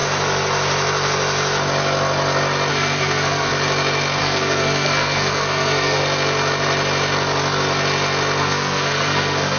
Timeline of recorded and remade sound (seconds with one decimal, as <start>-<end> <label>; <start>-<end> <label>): 0.0-2.7 recorded; 2.7-3.5 remade; 3.5-4.2 recorded; 4.2-6.0 remade; 6.0-8.4 recorded; 8.4-9.6 remade